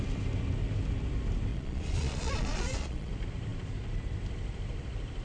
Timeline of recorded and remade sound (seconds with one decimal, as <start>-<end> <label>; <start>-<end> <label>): 0.0-1.5 recorded; 1.5-3.1 remade; 3.1-5.2 recorded